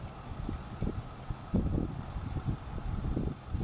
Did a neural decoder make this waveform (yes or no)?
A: no